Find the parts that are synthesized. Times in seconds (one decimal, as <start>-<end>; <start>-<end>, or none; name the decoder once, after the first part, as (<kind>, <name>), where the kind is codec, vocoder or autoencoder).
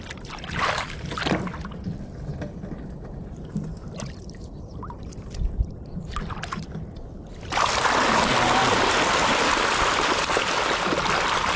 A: none